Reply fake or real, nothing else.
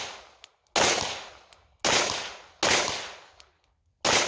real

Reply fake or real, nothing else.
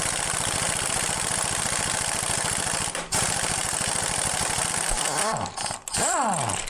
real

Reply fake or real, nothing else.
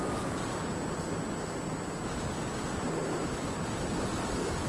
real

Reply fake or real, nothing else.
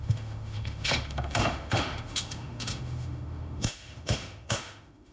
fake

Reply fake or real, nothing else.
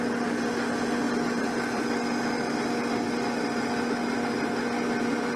real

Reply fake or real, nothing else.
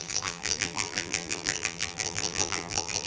fake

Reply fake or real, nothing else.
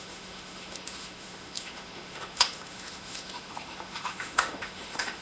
fake